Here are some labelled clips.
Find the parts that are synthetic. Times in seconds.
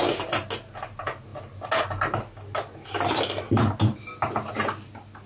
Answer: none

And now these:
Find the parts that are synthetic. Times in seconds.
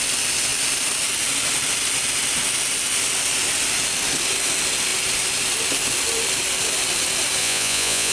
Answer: 7.4-8.1 (vocoder, Vocos)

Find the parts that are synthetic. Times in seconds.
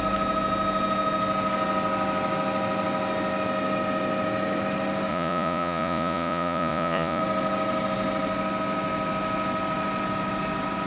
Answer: 5.1-7.2 (vocoder, Vocos)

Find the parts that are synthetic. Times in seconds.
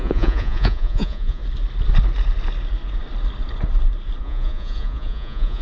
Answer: 0.0-1.4 (vocoder, Vocos); 4.2-5.6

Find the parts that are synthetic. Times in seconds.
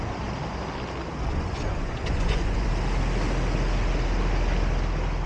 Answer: 1.3-2.7 (vocoder, Vocos)